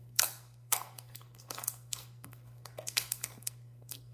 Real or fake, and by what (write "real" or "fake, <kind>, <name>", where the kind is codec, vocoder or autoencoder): fake, codec, SNAC